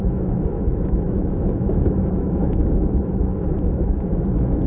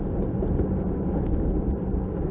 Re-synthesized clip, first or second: first